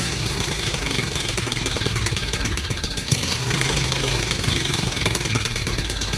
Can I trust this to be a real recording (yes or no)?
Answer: no